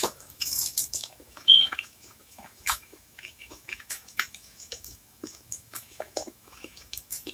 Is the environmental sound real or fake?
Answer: fake